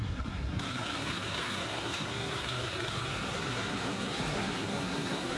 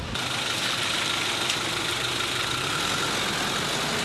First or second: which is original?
second